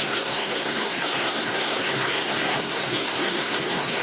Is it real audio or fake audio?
fake